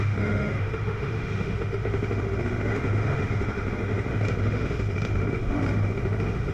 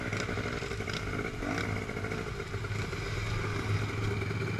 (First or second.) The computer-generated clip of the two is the first